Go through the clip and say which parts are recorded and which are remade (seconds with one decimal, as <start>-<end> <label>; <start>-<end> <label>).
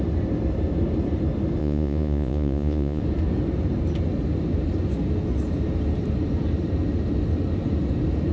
0.0-1.6 recorded; 1.6-3.0 remade; 3.0-8.3 recorded